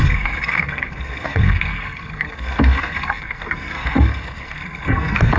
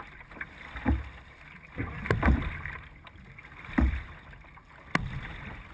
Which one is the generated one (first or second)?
first